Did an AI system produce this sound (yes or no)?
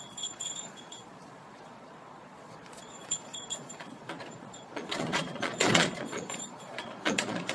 yes